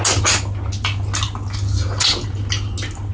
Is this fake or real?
real